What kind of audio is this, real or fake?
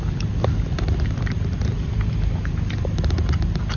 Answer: fake